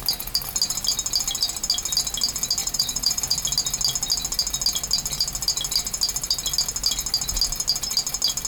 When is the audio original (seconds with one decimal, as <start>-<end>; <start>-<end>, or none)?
0.0-2.6; 3.2-8.5